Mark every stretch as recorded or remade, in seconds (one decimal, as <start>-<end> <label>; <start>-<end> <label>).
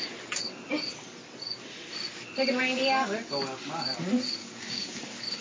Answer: 0.0-4.4 recorded; 4.4-5.0 remade; 5.0-5.4 recorded